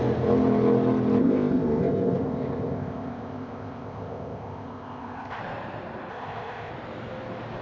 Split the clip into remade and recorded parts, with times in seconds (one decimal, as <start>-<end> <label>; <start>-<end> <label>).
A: 0.0-1.2 recorded; 1.2-5.4 remade; 5.4-6.1 recorded; 6.1-6.7 remade; 6.7-7.6 recorded